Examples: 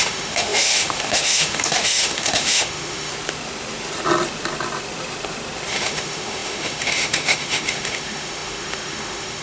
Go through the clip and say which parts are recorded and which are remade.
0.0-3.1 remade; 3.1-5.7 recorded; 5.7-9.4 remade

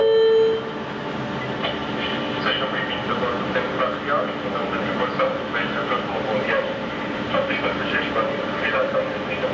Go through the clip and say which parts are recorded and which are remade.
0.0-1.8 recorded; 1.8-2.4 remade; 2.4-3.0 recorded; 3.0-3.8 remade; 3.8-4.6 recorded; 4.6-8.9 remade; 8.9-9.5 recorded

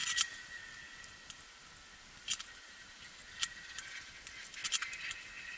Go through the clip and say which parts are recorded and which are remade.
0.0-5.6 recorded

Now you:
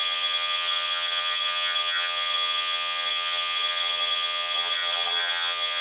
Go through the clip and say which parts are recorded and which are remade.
0.0-5.8 remade

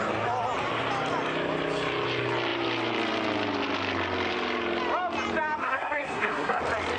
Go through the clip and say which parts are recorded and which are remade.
0.0-5.6 recorded; 5.6-6.6 remade; 6.6-7.0 recorded